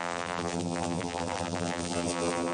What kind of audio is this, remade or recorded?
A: remade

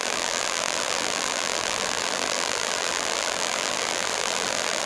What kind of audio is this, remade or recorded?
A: remade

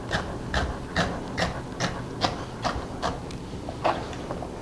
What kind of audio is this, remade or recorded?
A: recorded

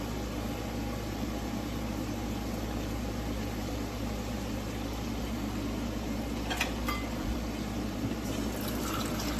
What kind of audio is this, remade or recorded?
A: recorded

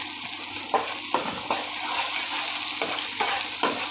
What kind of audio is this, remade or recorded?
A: recorded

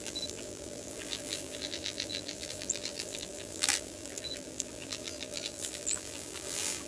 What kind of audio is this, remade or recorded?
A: remade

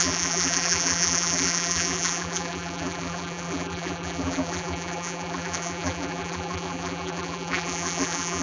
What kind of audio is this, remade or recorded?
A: remade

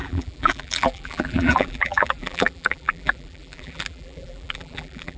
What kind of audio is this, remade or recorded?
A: remade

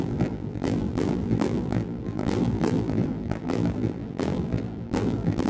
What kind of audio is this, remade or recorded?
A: remade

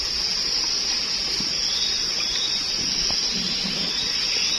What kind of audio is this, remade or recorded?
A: recorded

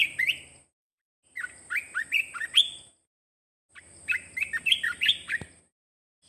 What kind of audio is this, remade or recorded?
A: recorded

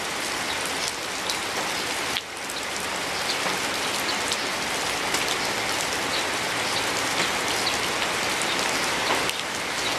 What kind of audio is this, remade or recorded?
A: recorded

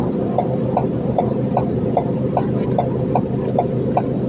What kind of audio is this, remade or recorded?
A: recorded